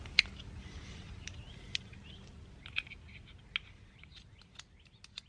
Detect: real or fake real